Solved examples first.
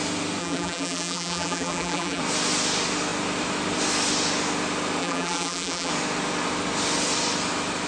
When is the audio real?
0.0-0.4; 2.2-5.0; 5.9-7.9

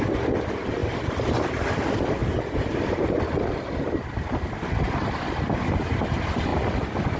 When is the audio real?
0.0-2.2; 3.1-6.5

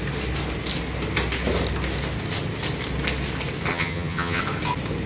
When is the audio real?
0.0-3.7; 4.4-5.1